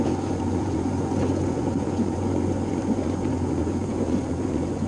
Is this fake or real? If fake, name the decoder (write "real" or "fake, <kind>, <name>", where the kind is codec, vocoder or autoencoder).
fake, vocoder, Vocos